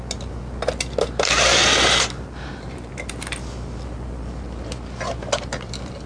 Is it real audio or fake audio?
real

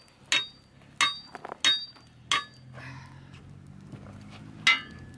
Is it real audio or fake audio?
real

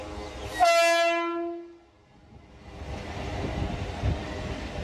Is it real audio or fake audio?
real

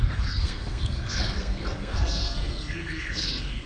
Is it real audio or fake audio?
fake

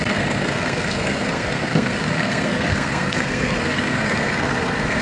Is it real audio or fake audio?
fake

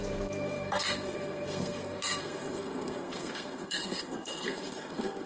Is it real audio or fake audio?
fake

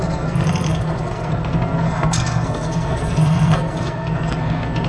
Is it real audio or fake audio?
fake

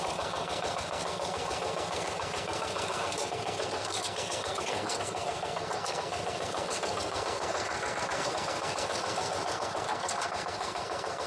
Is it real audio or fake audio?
fake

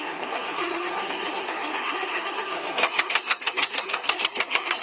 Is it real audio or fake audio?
fake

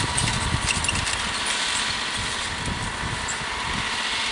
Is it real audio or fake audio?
real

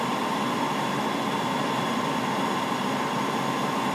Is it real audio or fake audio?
real